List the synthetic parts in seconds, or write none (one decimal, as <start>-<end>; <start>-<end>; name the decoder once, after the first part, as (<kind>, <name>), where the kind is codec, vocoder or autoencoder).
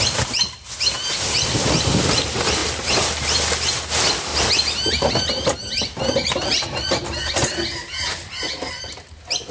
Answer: none